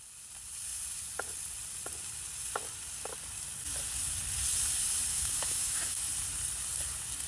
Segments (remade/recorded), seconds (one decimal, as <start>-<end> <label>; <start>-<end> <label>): 0.0-5.1 recorded; 5.1-6.0 remade; 6.0-7.3 recorded